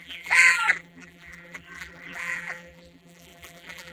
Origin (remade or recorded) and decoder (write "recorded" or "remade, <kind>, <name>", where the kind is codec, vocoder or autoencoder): remade, vocoder, BigVGAN v2